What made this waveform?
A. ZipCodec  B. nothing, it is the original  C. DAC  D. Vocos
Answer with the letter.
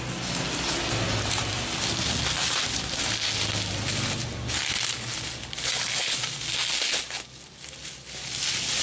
B